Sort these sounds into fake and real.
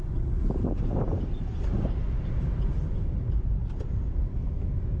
fake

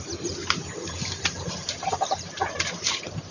fake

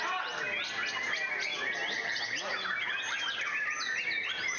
real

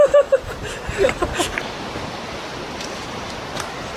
real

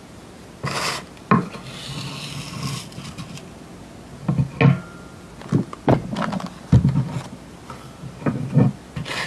real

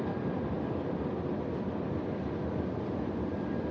real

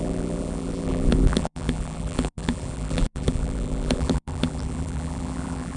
fake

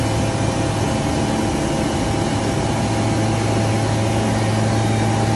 real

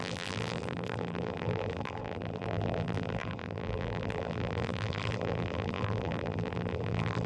fake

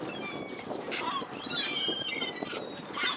fake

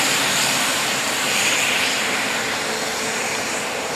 fake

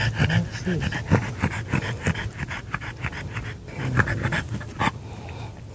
real